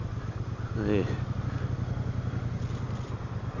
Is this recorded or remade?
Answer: recorded